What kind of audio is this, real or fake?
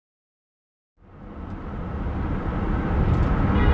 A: real